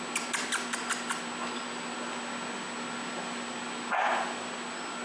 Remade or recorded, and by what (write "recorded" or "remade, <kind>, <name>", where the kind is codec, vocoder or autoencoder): recorded